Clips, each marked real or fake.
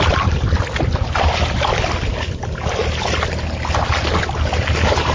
real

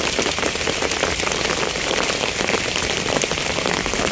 real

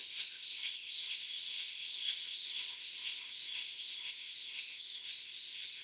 fake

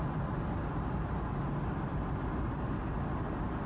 real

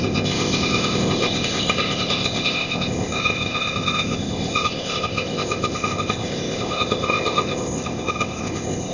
fake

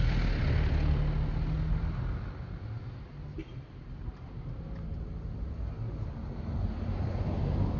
real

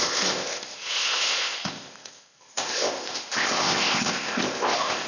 fake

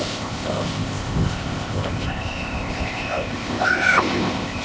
fake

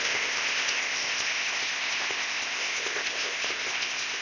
fake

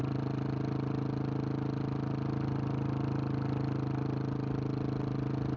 real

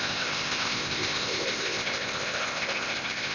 fake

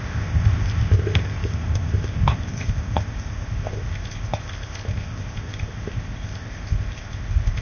fake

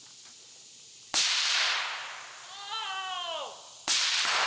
real